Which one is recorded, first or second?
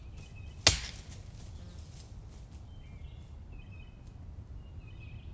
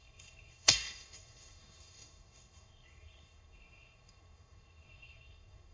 first